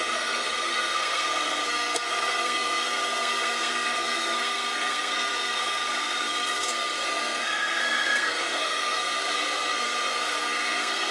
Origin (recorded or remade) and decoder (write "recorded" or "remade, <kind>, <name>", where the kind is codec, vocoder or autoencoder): remade, codec, SNAC